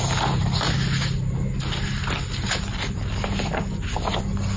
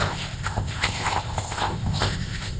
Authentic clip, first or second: first